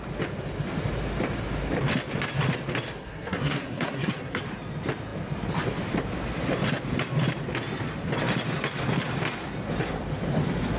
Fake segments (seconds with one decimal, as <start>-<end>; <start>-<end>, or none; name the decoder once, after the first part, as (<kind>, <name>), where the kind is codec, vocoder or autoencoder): 3.0-4.4 (codec, SNAC)